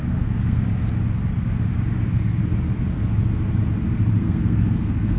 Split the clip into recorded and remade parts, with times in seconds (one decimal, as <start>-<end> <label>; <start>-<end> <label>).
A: 0.0-0.7 remade; 0.7-2.0 recorded; 2.0-2.4 remade; 2.4-4.2 recorded; 4.2-5.2 remade